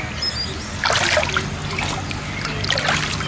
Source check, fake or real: real